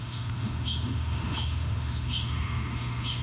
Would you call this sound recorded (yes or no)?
no